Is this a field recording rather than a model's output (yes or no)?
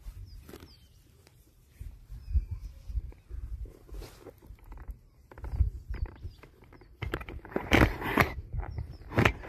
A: no